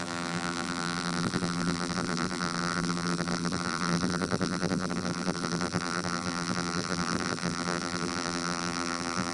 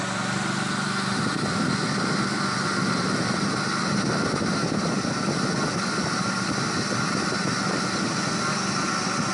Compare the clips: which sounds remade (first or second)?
first